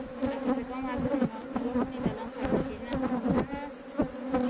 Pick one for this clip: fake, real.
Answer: real